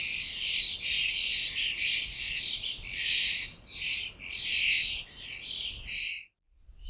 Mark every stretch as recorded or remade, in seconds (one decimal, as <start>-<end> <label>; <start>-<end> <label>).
0.0-6.9 recorded